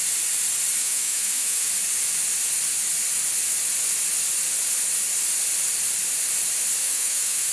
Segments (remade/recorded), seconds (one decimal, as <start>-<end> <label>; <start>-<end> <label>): 0.0-0.8 recorded; 0.8-1.7 remade; 1.7-6.8 recorded; 6.8-7.5 remade